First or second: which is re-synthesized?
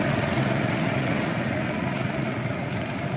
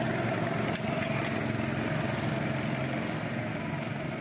first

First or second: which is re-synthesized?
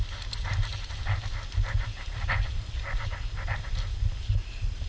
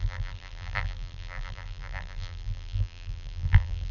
second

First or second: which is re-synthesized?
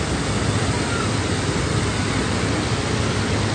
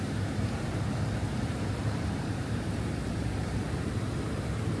second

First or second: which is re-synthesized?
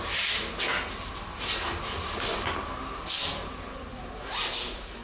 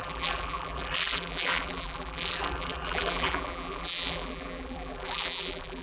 second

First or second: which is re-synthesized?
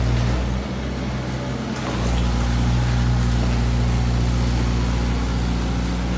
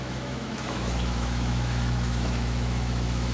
second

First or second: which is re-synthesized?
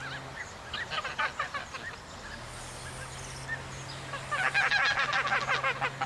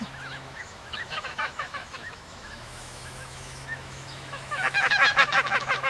second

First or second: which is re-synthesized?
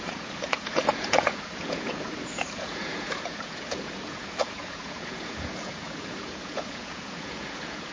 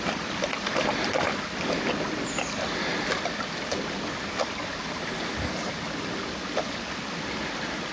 first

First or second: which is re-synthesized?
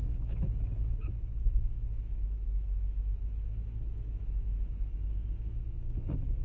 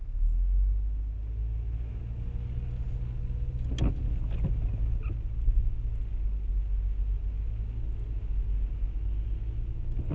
first